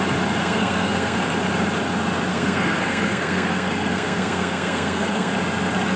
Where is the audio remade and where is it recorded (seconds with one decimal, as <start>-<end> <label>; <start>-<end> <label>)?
0.0-0.4 recorded; 0.4-1.2 remade; 1.2-2.3 recorded; 2.3-5.3 remade; 5.3-6.0 recorded